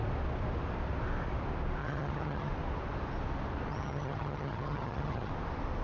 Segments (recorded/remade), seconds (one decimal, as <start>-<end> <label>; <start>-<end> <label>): 0.0-1.8 recorded; 1.8-2.5 remade; 2.5-3.7 recorded; 3.7-5.3 remade; 5.3-5.8 recorded